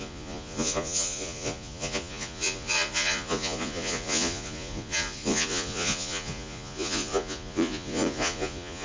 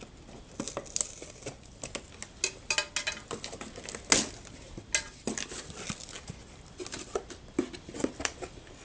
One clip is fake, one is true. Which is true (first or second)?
second